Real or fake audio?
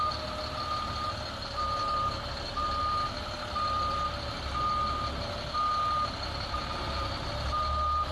real